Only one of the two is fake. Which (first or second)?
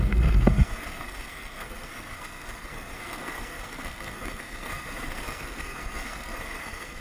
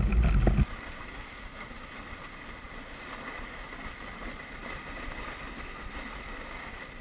first